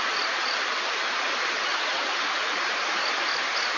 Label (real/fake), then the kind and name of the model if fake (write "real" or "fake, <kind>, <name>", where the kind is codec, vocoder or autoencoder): real